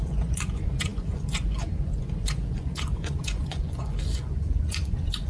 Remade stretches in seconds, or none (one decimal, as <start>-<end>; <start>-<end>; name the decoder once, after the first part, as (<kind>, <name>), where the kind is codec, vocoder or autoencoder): 0.0-5.3 (vocoder, Vocos)